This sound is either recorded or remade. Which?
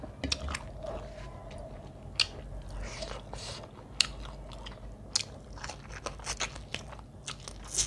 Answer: recorded